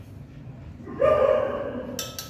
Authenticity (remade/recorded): recorded